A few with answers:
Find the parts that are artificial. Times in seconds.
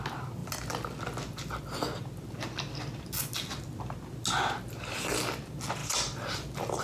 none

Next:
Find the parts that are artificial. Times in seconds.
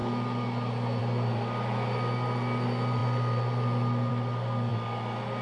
none